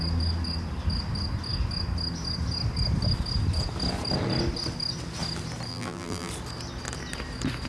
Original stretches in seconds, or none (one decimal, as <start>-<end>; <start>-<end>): 0.0-5.7; 6.3-7.7